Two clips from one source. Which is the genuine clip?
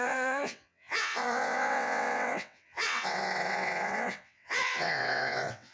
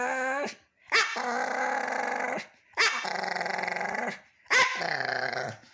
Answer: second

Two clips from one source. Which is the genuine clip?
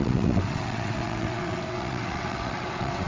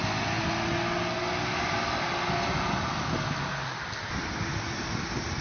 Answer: second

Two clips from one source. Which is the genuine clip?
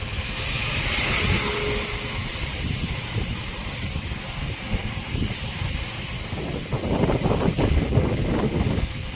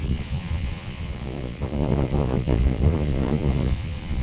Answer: first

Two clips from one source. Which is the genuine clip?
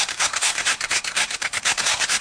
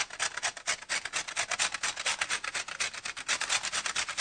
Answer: second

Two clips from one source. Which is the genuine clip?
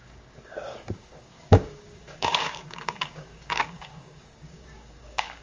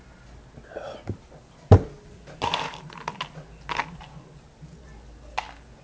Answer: second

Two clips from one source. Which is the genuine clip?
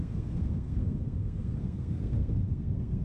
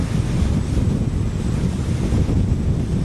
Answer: second